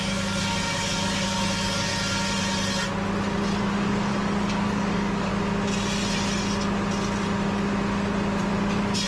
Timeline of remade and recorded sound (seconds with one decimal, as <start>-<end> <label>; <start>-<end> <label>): 0.0-1.9 remade; 1.9-3.7 recorded; 3.7-5.3 remade; 5.3-9.1 recorded